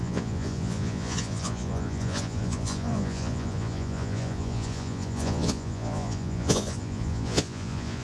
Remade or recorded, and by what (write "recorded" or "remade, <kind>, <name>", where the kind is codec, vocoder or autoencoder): remade, vocoder, Vocos